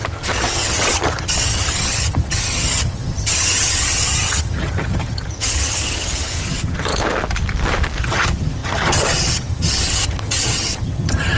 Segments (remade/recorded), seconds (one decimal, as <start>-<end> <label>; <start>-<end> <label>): 0.0-6.9 remade; 6.9-8.0 recorded; 8.0-11.4 remade